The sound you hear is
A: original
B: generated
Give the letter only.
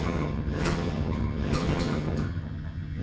B